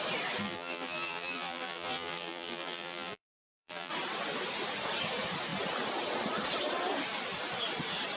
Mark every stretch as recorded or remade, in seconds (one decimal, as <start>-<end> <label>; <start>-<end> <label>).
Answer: 0.0-0.4 recorded; 0.4-3.9 remade; 3.9-8.2 recorded

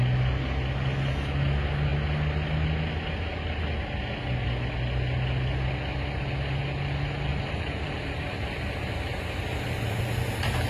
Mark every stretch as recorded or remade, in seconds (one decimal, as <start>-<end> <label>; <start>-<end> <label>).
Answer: 0.0-7.3 recorded; 7.3-10.0 remade; 10.0-10.7 recorded